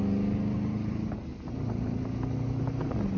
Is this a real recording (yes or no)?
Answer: yes